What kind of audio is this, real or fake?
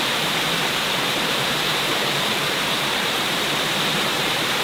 fake